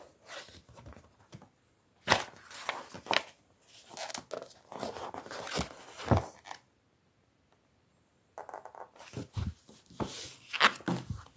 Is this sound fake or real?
real